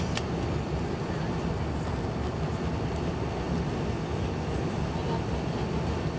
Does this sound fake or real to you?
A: real